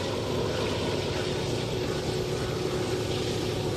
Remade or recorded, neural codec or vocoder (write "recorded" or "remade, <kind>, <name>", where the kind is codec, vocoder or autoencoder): recorded